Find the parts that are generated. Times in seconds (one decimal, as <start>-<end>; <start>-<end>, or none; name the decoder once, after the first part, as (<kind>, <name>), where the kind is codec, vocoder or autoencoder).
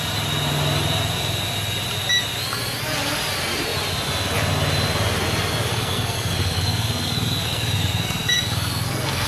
5.7-9.3 (codec, SNAC)